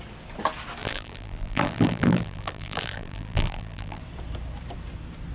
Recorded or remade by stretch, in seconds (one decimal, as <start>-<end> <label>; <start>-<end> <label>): 0.0-0.8 recorded; 0.8-4.0 remade; 4.0-5.3 recorded